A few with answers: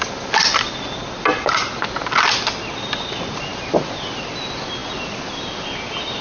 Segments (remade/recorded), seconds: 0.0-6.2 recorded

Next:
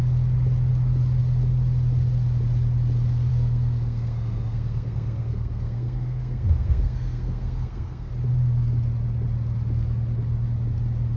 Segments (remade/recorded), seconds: 0.0-3.3 recorded; 3.3-8.1 remade; 8.1-11.2 recorded

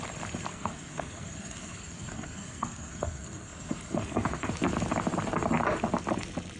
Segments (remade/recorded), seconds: 0.0-0.5 recorded; 0.5-4.5 remade; 4.5-6.6 recorded

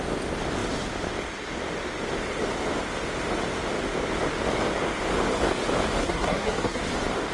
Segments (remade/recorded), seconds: 0.0-6.0 recorded; 6.0-6.8 remade; 6.8-7.3 recorded

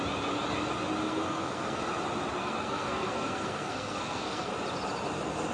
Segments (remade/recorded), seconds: 0.0-1.0 recorded; 1.0-1.8 remade; 1.8-2.4 recorded; 2.4-4.5 remade; 4.5-5.5 recorded